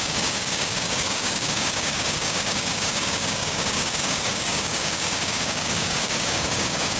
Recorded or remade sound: remade